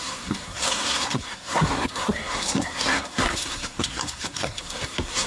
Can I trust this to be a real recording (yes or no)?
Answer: no